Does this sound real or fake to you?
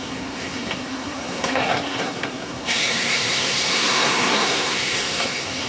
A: fake